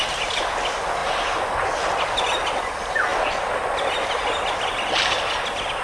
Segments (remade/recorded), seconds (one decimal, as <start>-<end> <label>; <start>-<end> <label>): 0.0-5.8 recorded